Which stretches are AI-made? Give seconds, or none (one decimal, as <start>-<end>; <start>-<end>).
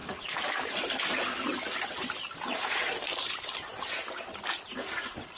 none